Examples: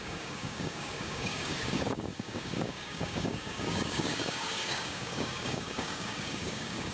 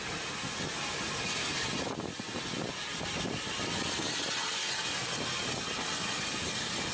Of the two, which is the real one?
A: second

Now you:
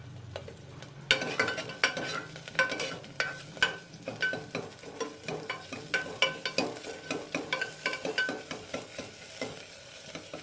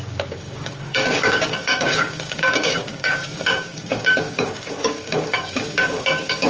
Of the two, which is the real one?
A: first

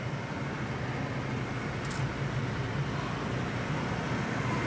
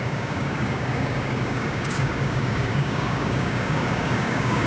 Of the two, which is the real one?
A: first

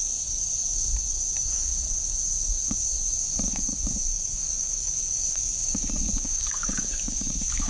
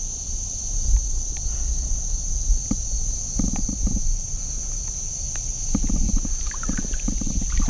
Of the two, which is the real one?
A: second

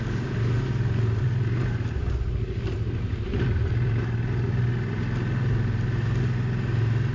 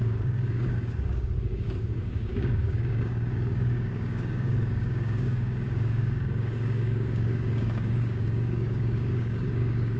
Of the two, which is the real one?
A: first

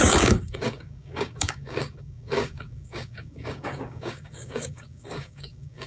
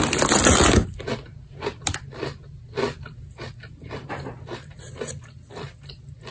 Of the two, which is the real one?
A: second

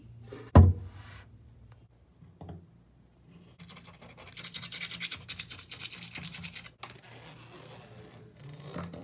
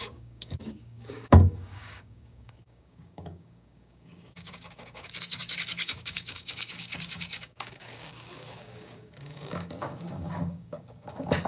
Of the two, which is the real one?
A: first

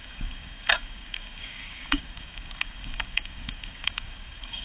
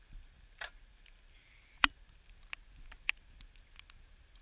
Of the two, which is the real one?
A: second